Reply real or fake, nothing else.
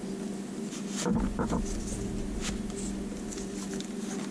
real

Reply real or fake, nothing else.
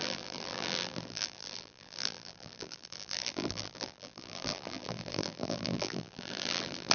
fake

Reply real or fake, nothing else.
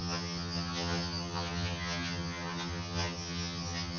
fake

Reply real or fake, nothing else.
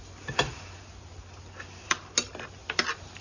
real